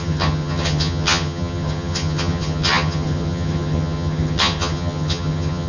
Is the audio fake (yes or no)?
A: yes